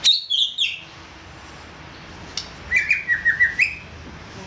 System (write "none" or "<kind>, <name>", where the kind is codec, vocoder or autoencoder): none